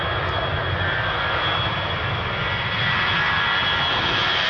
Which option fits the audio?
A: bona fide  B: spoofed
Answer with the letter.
A